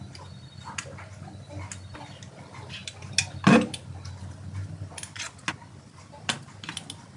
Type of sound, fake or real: real